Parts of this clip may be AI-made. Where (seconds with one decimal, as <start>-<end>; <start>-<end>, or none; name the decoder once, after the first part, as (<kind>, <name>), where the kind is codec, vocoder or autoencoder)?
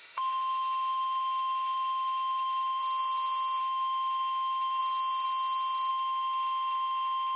0.0-2.8 (autoencoder, DAC-VAE); 3.6-4.8; 5.9-7.4